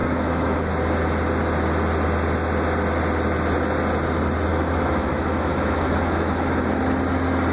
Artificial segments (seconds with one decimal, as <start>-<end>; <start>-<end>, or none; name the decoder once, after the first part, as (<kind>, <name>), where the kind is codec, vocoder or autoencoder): 0.0-0.7 (autoencoder, DAC-VAE); 4.5-6.6